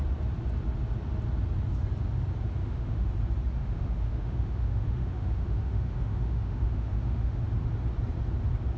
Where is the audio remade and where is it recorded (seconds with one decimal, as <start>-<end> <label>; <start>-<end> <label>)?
0.0-2.6 recorded; 2.6-3.1 remade; 3.1-3.6 recorded; 3.6-7.4 remade; 7.4-8.8 recorded

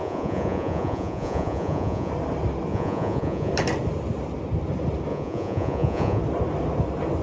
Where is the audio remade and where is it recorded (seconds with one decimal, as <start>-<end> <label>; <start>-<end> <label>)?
0.0-2.1 remade; 2.1-2.7 recorded; 2.7-3.5 remade; 3.5-5.1 recorded; 5.1-6.2 remade; 6.2-7.2 recorded

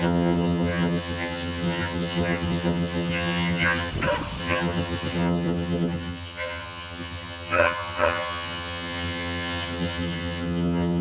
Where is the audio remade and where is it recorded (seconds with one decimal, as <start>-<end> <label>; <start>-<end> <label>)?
0.0-3.9 remade; 3.9-4.4 recorded; 4.4-11.0 remade

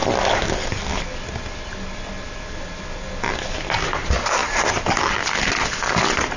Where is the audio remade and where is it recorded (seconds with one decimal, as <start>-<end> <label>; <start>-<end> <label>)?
0.0-6.4 recorded

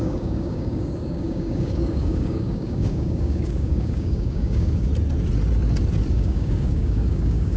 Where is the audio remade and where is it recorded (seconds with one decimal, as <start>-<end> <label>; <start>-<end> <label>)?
0.0-4.9 remade; 4.9-6.1 recorded; 6.1-7.6 remade

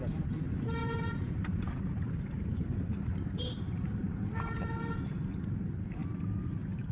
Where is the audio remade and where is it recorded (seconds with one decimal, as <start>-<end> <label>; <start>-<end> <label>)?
0.0-0.8 recorded; 0.8-4.9 remade; 4.9-6.9 recorded

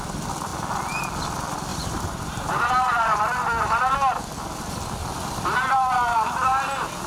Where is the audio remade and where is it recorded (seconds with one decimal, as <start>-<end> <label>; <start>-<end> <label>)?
0.0-1.7 recorded; 1.7-3.2 remade; 3.2-5.0 recorded; 5.0-5.7 remade; 5.7-7.1 recorded